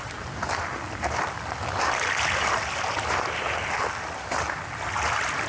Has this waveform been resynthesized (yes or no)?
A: no